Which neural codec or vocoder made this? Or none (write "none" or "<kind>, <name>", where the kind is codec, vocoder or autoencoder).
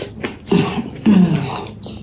none